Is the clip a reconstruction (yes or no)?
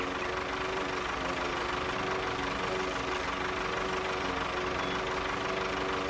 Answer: no